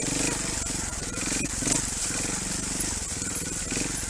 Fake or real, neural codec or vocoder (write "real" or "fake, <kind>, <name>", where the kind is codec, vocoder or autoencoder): real